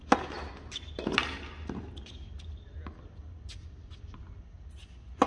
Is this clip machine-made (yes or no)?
no